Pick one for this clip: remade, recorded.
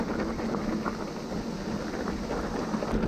recorded